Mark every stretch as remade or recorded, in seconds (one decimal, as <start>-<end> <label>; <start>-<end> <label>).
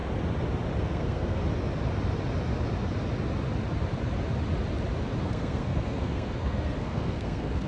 0.0-0.8 recorded; 0.8-1.4 remade; 1.4-5.2 recorded; 5.2-7.7 remade